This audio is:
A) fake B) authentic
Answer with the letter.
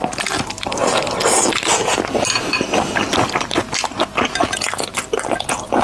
B